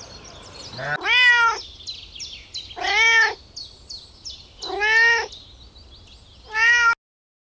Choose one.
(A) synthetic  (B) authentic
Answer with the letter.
B